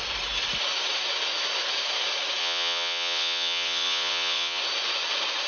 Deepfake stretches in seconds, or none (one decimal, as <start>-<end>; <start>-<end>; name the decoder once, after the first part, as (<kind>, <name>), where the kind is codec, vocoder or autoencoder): 2.4-4.6 (vocoder, WaveNeXt)